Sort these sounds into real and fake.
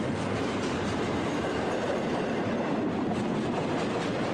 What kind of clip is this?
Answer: fake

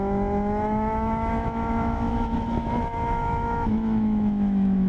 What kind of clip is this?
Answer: fake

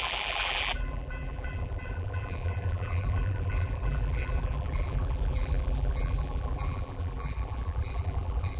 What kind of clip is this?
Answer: fake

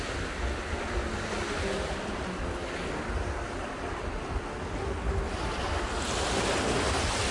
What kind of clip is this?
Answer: real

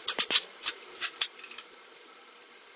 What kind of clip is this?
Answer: fake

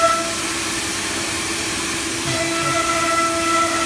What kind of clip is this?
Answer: real